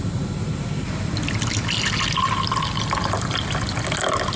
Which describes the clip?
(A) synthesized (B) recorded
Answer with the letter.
B